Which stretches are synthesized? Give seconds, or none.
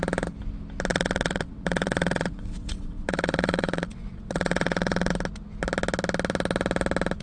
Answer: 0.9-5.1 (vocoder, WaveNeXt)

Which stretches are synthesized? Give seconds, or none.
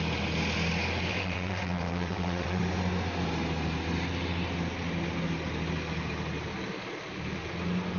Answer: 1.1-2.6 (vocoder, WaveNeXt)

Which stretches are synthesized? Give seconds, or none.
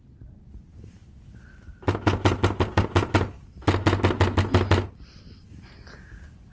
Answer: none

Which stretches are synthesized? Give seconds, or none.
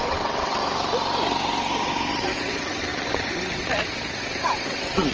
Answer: 0.0-0.6 (vocoder, WaveNeXt); 2.1-5.1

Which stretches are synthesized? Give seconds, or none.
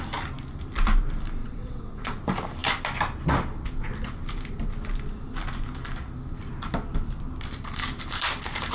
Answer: 1.4-2.2 (vocoder, WaveNeXt)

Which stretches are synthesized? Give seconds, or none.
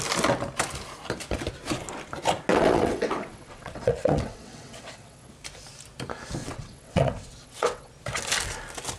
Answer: 2.5-5.3 (vocoder, WaveNeXt); 6.4-7.9